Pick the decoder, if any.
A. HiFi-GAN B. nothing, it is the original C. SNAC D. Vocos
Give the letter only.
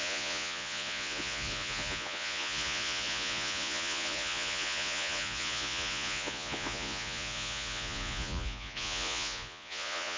D